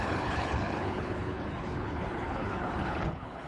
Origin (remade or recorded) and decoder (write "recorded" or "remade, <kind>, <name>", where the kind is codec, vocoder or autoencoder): remade, codec, HILCodec